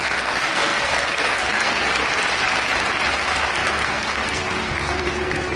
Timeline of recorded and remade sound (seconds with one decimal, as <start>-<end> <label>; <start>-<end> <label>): 0.0-2.0 remade; 2.0-3.1 recorded; 3.1-5.6 remade